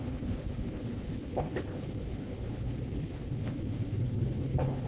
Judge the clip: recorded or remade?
remade